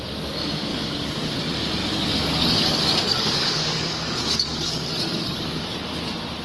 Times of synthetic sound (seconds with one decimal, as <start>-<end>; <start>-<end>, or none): 0.7-1.3; 1.8-5.6